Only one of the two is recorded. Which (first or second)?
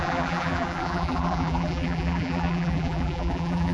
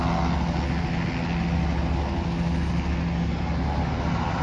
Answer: second